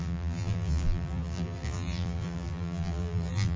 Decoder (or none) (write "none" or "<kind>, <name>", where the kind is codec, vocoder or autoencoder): vocoder, BigVGAN v2